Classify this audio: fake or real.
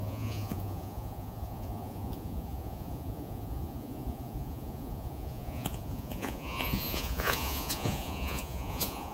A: fake